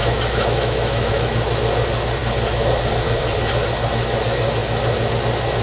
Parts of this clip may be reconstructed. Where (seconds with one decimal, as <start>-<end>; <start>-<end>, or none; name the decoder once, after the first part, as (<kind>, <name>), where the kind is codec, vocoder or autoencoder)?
0.0-1.1 (autoencoder, DAC-VAE)